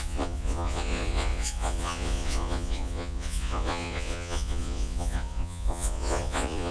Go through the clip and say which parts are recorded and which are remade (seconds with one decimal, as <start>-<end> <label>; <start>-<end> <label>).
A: 0.0-6.7 remade